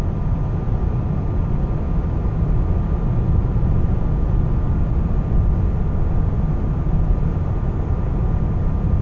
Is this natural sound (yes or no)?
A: yes